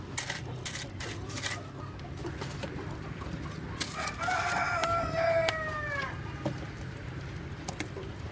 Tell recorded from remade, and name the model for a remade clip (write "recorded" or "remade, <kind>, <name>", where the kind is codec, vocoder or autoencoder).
recorded